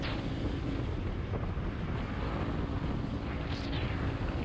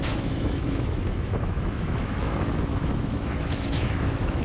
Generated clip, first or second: second